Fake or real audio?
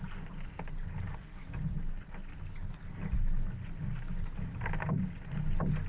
real